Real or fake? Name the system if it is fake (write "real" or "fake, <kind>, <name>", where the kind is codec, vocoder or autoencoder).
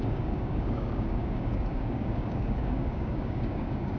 fake, codec, DAC